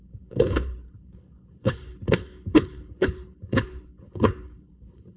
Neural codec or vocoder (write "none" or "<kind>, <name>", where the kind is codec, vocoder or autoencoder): codec, HILCodec